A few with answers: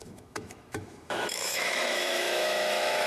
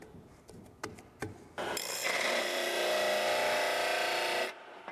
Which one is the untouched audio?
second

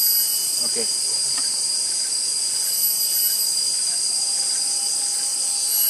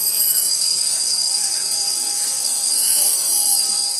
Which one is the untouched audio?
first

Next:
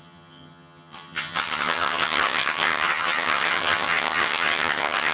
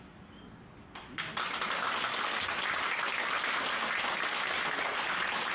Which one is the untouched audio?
second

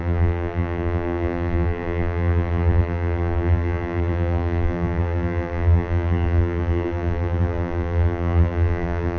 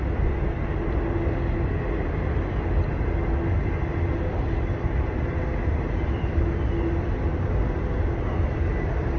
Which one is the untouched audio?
second